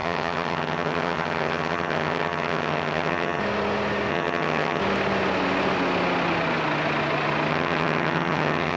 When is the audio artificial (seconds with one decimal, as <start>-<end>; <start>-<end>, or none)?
0.0-3.4; 4.1-4.8; 7.5-8.8